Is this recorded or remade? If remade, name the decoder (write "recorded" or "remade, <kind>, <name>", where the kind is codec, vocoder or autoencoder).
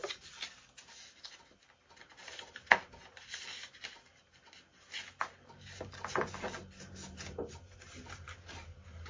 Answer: recorded